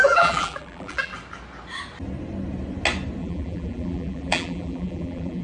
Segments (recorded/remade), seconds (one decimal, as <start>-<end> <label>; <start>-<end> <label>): 0.0-1.1 remade; 1.1-3.2 recorded; 3.2-5.4 remade